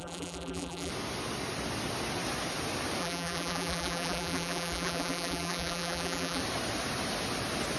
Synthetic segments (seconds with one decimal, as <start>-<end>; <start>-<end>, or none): 0.0-0.9; 3.0-6.4